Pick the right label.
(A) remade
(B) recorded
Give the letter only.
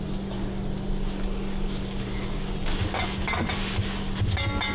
B